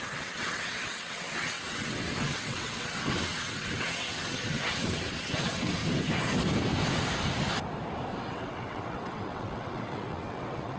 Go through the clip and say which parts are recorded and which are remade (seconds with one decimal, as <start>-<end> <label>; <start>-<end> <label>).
0.0-5.8 remade; 5.8-8.2 recorded; 8.2-10.8 remade